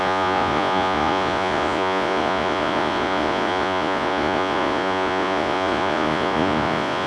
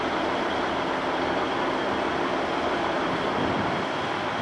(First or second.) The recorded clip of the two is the second